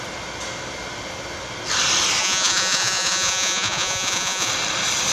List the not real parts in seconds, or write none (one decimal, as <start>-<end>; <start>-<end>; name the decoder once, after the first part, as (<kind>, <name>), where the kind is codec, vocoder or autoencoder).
2.2-4.5 (vocoder, Vocos)